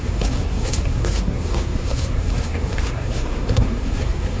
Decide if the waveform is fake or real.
fake